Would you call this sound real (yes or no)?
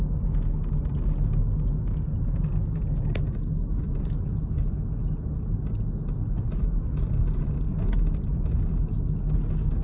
yes